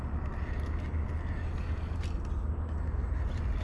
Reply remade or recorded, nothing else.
recorded